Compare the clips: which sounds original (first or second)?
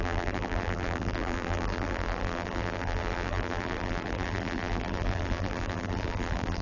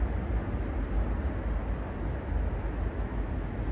second